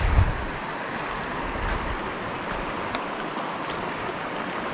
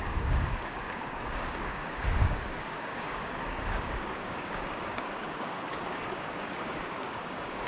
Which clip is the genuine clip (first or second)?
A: first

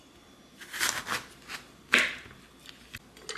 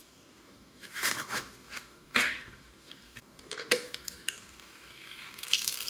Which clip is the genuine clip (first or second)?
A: first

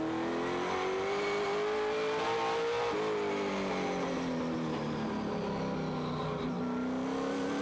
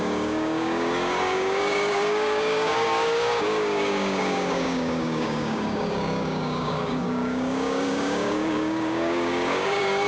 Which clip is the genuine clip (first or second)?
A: first